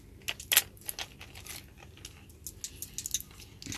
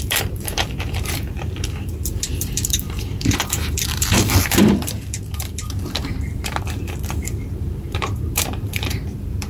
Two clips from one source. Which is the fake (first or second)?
second